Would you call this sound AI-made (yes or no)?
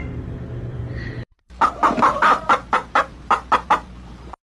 yes